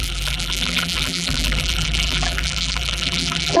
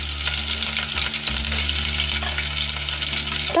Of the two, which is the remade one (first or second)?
first